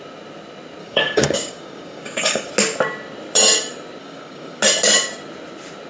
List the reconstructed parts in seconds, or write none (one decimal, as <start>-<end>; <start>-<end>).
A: 0.8-2.5; 4.0-4.6